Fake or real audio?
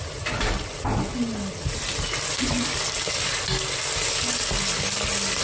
real